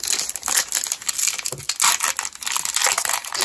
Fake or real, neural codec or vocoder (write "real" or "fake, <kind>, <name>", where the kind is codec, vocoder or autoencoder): real